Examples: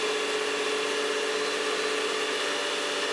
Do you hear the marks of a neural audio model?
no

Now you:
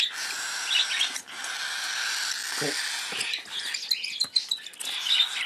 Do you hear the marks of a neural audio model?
no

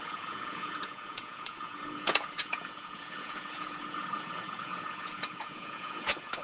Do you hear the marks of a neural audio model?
yes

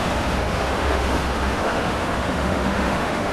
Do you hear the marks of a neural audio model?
yes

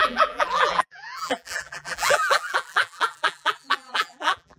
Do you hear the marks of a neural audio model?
yes